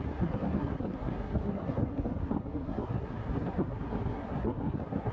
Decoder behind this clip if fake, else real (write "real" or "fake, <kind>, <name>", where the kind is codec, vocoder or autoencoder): fake, codec, SNAC